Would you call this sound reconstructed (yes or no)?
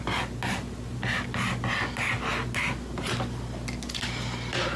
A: no